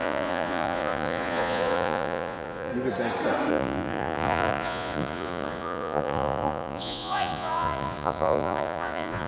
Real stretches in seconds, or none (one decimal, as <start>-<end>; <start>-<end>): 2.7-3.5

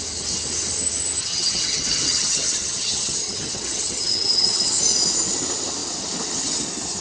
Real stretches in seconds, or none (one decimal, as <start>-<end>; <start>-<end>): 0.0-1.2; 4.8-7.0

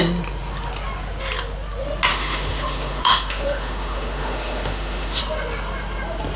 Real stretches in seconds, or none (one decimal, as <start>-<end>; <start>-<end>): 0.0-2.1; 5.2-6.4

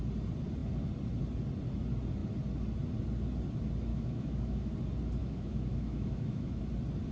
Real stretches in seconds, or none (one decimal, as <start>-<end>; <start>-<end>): 0.0-3.9; 4.7-5.2; 6.6-7.1

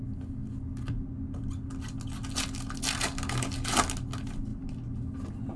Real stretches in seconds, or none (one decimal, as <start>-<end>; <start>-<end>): 0.0-5.6

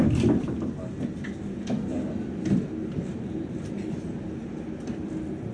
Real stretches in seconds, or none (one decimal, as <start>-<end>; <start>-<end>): 0.0-3.1; 3.6-5.5

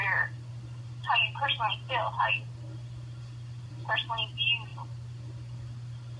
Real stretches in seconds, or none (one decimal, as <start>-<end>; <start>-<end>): 0.0-6.2